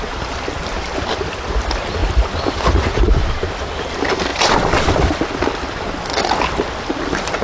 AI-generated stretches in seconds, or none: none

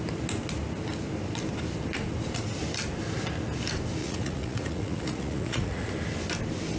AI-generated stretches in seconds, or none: 4.0-5.9 (vocoder, Vocos)